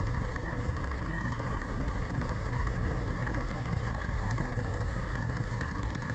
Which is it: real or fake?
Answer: fake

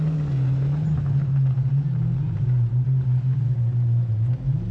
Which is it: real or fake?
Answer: real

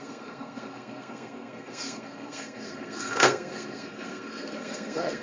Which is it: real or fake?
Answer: fake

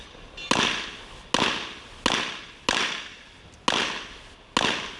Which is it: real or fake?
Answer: real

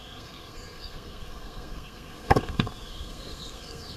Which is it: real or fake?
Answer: fake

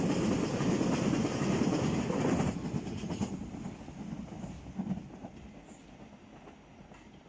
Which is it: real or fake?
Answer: real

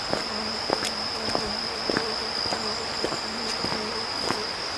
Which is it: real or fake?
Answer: real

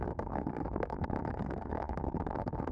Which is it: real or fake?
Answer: fake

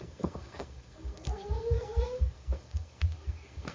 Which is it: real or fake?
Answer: fake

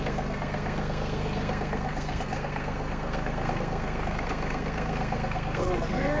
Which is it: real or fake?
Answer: fake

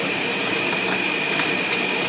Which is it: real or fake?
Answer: real